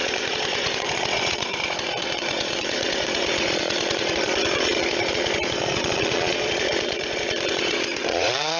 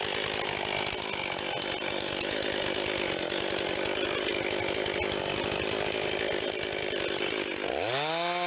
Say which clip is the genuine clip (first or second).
second